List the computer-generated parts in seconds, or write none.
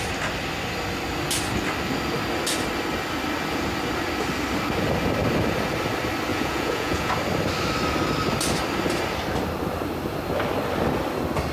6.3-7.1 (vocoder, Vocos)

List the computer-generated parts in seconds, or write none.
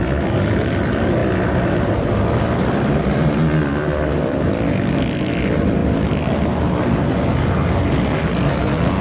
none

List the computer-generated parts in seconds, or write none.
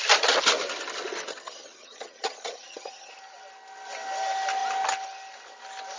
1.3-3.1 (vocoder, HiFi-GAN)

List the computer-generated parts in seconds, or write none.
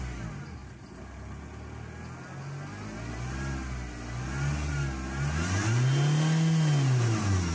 none